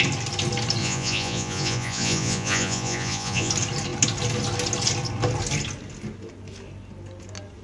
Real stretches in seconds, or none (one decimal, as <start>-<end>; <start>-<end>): 0.0-0.8; 3.5-7.6